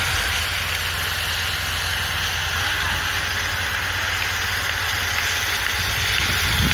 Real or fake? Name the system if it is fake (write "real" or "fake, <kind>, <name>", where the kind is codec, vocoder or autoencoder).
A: real